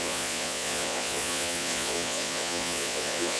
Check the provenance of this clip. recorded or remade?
remade